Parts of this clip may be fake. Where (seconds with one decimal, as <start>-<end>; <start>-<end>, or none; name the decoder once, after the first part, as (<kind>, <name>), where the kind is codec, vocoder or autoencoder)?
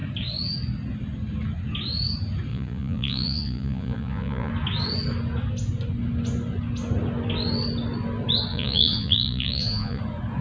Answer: 2.5-4.5 (vocoder, Vocos); 8.5-10.0